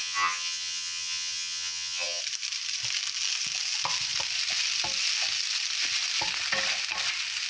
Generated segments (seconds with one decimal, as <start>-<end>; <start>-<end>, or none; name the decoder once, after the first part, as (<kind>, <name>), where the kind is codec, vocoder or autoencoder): 0.0-2.2 (vocoder, HiFi-GAN)